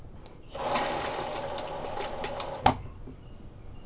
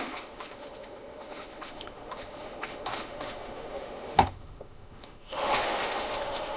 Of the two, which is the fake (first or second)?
second